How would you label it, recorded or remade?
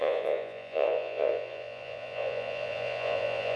remade